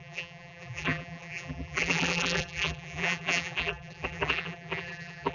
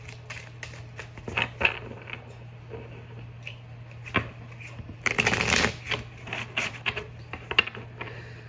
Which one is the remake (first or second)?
first